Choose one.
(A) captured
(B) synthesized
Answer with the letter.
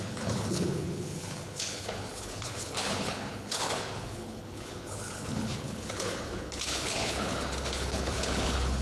B